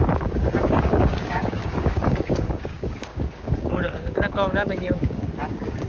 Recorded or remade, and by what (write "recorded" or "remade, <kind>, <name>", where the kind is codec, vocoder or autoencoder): remade, codec, DAC